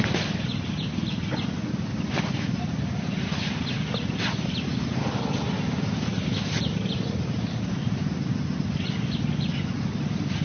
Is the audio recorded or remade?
recorded